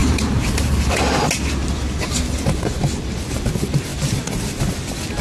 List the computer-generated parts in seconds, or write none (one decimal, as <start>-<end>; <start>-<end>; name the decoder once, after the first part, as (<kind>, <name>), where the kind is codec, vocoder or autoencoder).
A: 0.0-1.1 (vocoder, BigVGAN v2); 1.6-2.6